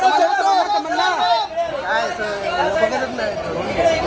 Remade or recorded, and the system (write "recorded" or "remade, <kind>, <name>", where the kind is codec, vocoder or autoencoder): recorded